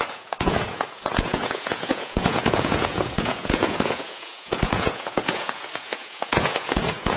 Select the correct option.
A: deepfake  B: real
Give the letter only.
A